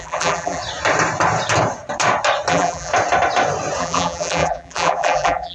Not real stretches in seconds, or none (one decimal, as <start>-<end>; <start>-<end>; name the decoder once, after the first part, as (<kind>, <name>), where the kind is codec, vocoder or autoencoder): 0.0-0.6 (vocoder, BigVGAN v2); 2.5-2.9; 3.8-5.5